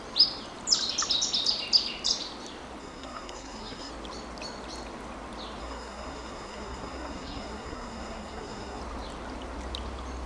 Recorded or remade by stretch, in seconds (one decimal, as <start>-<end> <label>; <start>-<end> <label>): 0.0-2.8 recorded; 2.8-3.9 remade; 3.9-5.6 recorded; 5.6-8.8 remade; 8.8-10.3 recorded